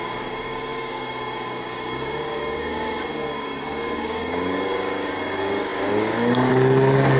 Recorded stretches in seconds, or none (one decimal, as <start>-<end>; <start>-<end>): none